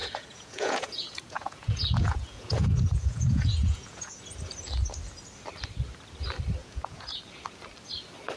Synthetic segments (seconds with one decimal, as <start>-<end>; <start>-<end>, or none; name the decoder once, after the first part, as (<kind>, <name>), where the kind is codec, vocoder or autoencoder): 0.0-4.1 (vocoder, Vocos); 6.6-7.2